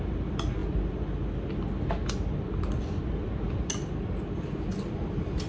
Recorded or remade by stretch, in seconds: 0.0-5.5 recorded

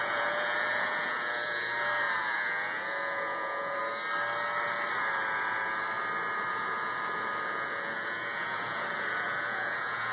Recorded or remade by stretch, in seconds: 0.0-3.8 remade; 3.8-6.5 recorded; 6.5-10.1 remade

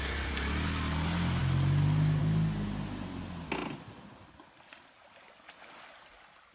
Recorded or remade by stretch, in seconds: 0.0-6.5 recorded